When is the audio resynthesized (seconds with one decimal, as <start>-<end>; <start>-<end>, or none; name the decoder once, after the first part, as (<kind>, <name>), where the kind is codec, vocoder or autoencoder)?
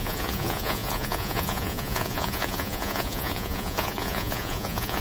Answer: 0.0-5.0 (vocoder, Vocos)